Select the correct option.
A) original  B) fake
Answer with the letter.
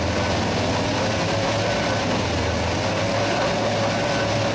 A